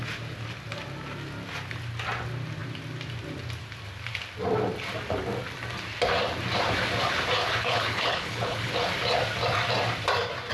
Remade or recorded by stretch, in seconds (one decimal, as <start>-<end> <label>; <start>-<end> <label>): 0.0-7.6 recorded; 7.6-8.7 remade; 8.7-10.5 recorded